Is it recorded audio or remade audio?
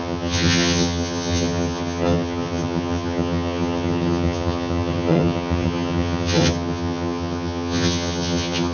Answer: remade